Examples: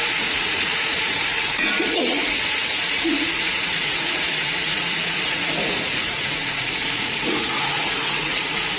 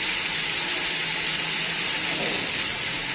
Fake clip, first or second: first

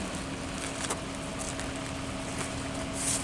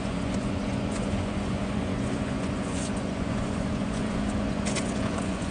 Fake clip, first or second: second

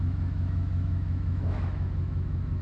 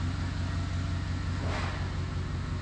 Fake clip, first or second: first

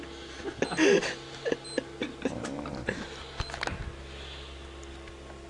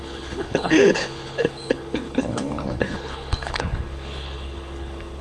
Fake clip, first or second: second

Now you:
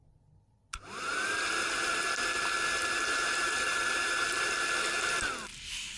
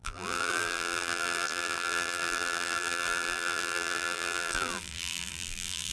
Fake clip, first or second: second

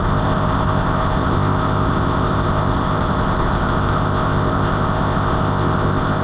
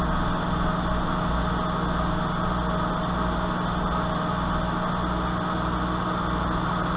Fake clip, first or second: first